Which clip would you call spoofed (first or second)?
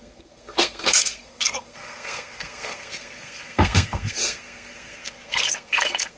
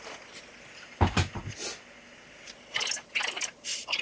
first